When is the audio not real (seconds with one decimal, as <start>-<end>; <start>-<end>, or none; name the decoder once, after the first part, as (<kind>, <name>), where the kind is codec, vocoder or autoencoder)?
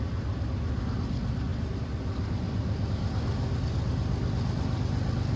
none